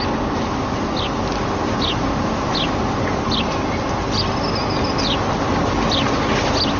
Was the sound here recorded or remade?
recorded